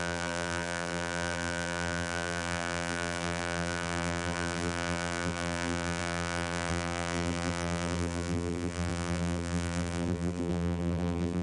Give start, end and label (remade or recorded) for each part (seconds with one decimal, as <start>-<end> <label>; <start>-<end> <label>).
0.0-11.4 remade